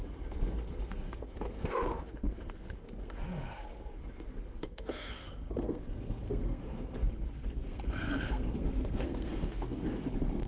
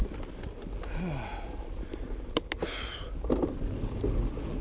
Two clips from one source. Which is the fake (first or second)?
first